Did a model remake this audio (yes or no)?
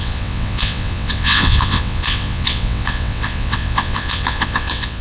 yes